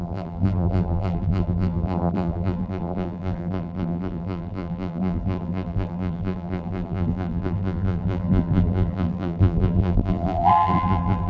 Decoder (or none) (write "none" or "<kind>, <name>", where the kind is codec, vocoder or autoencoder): vocoder, BigVGAN v2